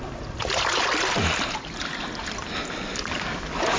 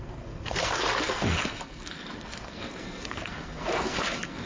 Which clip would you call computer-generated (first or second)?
second